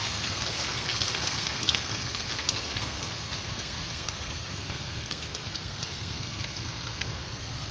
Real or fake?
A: fake